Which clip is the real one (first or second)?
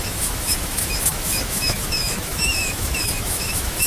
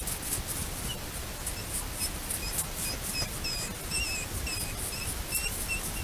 second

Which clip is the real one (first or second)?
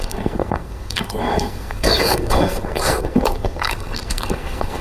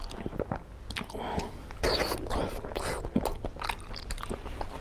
second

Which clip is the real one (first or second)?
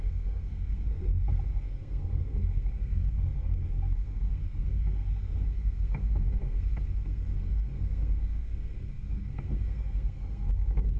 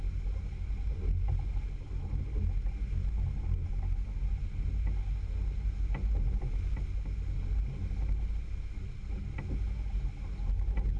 second